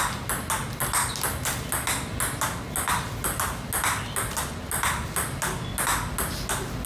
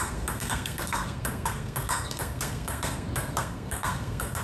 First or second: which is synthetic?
second